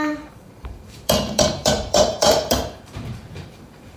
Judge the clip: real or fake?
fake